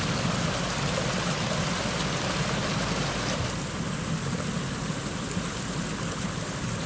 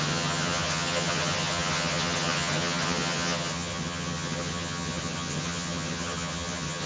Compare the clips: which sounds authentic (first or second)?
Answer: first